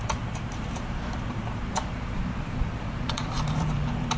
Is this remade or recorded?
remade